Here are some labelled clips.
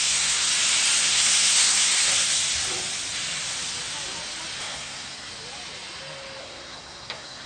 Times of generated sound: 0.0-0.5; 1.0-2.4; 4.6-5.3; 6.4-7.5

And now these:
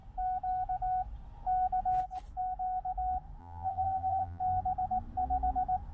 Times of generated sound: 3.4-4.4

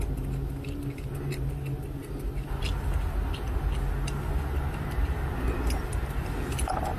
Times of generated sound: none

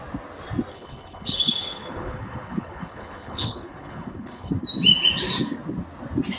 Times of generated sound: 0.7-4.5